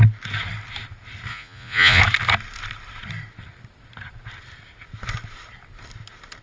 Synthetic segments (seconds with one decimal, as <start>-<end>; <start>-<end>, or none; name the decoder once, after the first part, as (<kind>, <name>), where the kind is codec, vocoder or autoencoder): 1.3-2.0 (vocoder, Vocos)